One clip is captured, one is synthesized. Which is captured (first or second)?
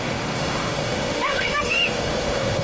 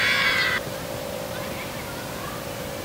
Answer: second